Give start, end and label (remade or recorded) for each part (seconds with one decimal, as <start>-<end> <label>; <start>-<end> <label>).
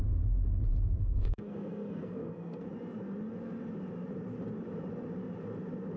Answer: 0.0-1.0 recorded; 1.0-2.7 remade; 2.7-6.0 recorded